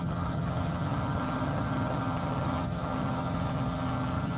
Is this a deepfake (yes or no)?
yes